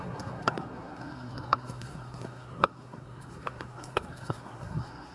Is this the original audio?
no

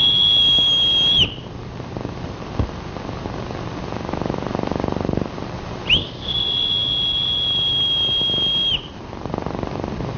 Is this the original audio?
yes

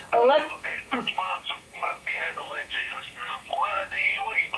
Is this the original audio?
no